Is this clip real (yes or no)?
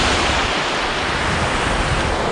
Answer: yes